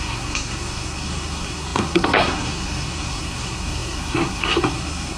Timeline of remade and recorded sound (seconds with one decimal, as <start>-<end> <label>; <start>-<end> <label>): 0.0-5.2 remade